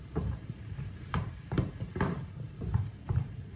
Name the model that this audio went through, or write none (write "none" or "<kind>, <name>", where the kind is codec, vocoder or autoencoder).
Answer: vocoder, BigVGAN v2